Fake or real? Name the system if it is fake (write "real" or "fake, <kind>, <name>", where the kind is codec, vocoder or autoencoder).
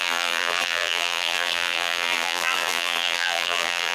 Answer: fake, vocoder, BigVGAN v2